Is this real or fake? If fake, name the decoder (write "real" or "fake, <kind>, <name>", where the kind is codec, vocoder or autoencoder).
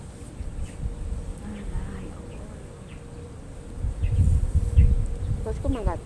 real